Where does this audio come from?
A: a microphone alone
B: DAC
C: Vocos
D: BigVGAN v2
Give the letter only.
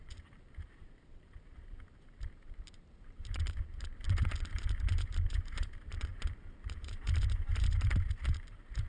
D